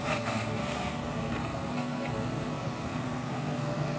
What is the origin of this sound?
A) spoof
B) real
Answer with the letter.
A